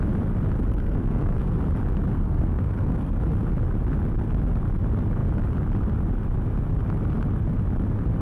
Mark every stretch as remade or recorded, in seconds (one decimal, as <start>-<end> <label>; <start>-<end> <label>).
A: 0.0-0.7 recorded; 0.7-1.6 remade; 1.6-2.1 recorded; 2.1-3.2 remade; 3.2-8.2 recorded